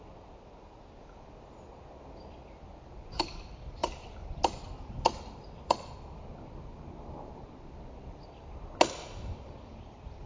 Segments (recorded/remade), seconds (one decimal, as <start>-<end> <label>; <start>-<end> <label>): 0.0-3.8 recorded; 3.8-5.9 remade; 5.9-10.3 recorded